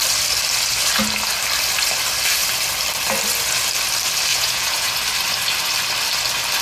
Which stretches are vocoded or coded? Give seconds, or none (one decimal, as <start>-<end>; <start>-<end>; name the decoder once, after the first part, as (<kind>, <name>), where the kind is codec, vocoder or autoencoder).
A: 4.3-4.9 (vocoder, Vocos)